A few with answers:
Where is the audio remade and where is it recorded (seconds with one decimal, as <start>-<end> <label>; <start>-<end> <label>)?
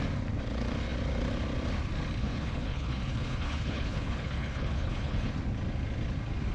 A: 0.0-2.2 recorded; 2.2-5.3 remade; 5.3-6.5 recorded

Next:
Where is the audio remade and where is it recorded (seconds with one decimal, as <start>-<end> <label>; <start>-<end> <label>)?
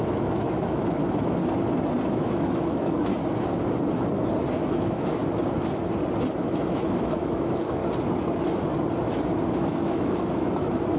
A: 0.0-1.4 remade; 1.4-2.1 recorded; 2.1-3.1 remade; 3.1-4.5 recorded; 4.5-5.2 remade; 5.2-6.3 recorded; 6.3-7.8 remade; 7.8-9.5 recorded; 9.5-11.0 remade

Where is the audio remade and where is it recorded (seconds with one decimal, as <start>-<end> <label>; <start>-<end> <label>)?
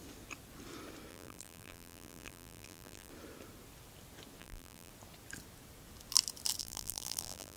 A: 0.0-1.1 recorded; 1.1-3.1 remade; 3.1-4.4 recorded; 4.4-4.9 remade; 4.9-6.6 recorded; 6.6-7.6 remade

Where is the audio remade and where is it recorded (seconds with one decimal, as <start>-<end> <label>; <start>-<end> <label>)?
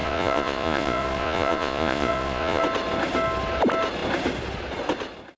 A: 0.0-2.6 remade; 2.6-5.4 recorded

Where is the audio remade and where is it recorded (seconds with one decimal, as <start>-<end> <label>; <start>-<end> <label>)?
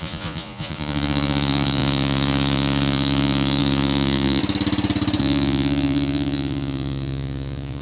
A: 0.0-4.4 remade; 4.4-5.2 recorded; 5.2-7.8 remade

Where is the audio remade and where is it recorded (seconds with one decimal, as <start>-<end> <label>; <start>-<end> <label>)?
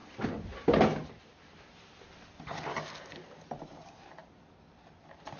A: 0.0-5.4 recorded